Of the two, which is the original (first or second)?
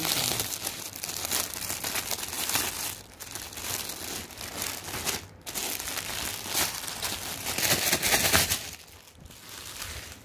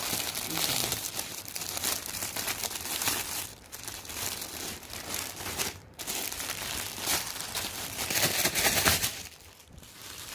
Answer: first